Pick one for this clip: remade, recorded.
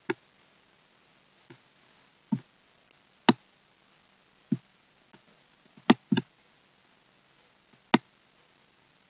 recorded